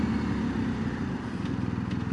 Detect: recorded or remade recorded